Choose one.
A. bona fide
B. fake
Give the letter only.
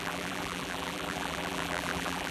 B